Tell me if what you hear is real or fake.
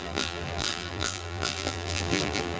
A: fake